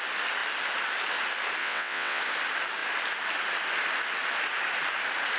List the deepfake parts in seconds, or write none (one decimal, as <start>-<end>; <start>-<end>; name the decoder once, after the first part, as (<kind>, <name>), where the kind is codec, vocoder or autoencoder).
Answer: 1.6-2.2 (vocoder, WaveNeXt)